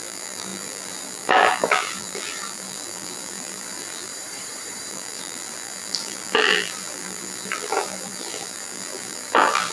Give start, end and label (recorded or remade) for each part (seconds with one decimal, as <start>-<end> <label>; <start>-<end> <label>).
0.0-4.1 remade; 4.1-4.9 recorded; 4.9-9.7 remade

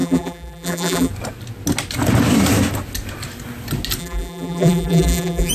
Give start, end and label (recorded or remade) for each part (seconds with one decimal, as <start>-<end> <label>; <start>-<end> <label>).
0.0-1.1 remade; 1.1-4.0 recorded; 4.0-5.5 remade

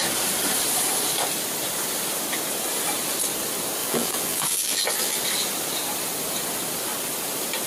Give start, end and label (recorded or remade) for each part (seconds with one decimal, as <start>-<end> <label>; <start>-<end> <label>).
0.0-3.8 recorded; 3.8-5.2 remade; 5.2-7.7 recorded